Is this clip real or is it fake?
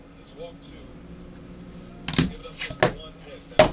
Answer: real